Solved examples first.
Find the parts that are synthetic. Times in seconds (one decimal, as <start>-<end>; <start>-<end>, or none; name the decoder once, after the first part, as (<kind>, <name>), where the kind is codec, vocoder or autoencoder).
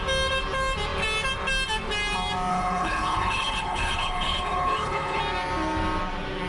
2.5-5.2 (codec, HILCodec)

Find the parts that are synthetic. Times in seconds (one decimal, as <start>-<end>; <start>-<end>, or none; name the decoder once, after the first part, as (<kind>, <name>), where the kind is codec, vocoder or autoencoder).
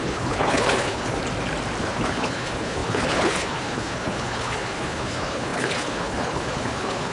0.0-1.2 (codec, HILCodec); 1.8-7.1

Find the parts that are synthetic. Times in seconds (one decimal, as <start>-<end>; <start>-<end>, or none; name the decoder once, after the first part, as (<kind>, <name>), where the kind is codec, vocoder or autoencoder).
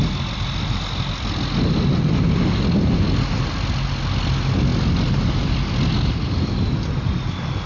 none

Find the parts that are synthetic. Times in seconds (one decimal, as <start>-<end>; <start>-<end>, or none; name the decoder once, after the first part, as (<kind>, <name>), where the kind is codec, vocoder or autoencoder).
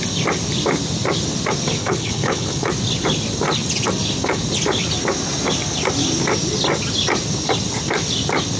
1.8-2.7 (codec, HILCodec)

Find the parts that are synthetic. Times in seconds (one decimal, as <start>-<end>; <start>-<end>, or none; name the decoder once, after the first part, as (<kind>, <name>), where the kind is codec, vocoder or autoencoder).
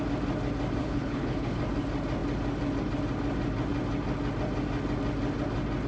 0.8-1.6 (codec, HILCodec)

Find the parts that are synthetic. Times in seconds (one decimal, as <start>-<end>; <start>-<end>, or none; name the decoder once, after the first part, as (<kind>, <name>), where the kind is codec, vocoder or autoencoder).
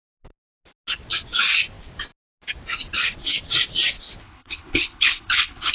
4.2-5.7 (codec, HILCodec)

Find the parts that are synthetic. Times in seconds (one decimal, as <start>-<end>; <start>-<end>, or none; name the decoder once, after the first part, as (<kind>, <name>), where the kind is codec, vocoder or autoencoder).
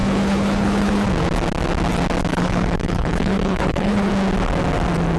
0.0-1.1 (codec, HILCodec); 2.3-4.1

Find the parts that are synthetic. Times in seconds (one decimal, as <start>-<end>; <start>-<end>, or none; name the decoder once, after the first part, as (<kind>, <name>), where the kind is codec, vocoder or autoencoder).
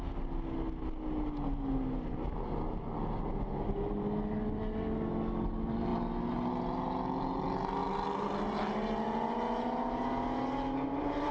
none